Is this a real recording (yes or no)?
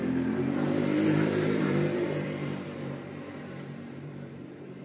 no